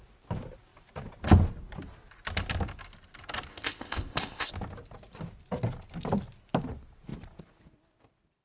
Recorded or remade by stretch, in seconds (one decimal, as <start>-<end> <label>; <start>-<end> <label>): 0.0-3.5 recorded; 3.5-4.5 remade; 4.5-8.4 recorded